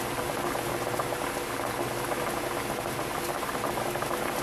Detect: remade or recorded recorded